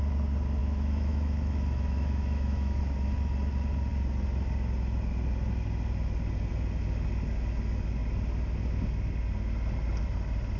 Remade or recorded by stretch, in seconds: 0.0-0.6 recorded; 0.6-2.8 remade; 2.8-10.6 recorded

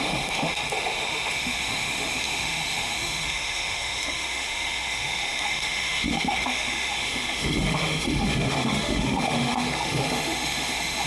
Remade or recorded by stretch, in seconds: 0.0-11.1 remade

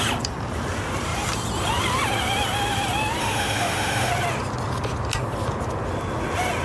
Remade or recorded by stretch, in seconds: 0.0-3.2 recorded; 3.2-4.1 remade; 4.1-6.6 recorded

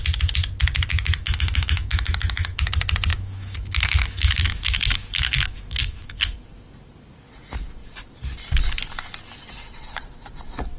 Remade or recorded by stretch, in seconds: 0.0-0.9 recorded; 0.9-2.7 remade; 2.7-3.1 recorded; 3.1-6.4 remade; 6.4-10.8 recorded

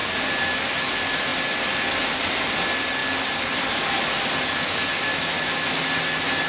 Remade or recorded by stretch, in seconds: 0.0-6.5 recorded

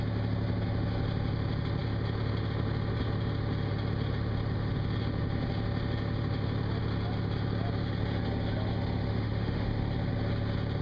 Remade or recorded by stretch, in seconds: 0.0-9.1 recorded; 9.1-9.7 remade; 9.7-10.8 recorded

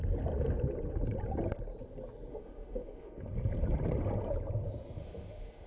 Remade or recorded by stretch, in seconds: 0.0-2.3 recorded; 2.3-3.2 remade; 3.2-5.0 recorded; 5.0-5.7 remade